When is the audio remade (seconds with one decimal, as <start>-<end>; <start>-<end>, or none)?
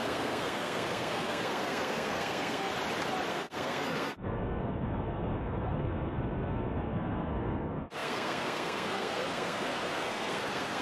0.0-2.7; 3.3-10.8